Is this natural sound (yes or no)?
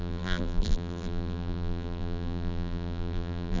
no